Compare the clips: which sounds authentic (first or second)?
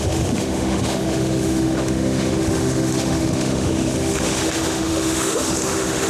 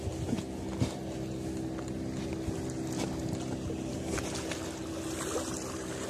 second